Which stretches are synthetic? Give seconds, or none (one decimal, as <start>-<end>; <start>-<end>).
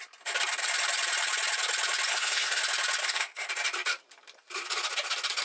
2.1-2.6; 3.0-3.5